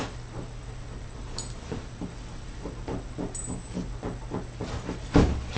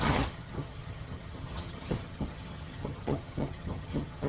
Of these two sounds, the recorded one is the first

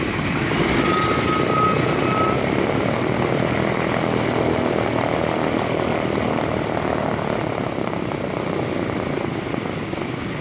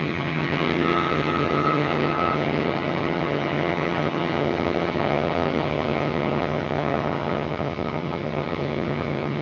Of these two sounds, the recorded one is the first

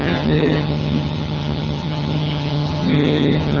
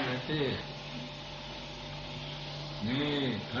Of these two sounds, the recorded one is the second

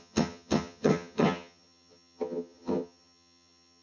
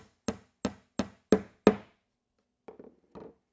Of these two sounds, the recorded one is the second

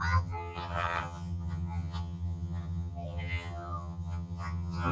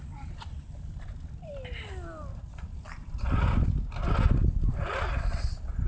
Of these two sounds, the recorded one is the second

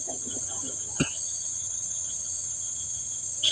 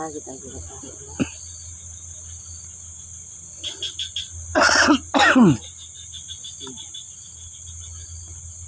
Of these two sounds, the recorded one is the second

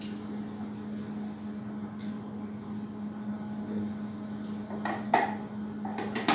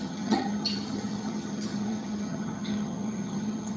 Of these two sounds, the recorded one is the first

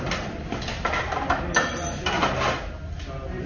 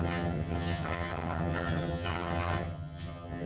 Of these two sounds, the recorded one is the first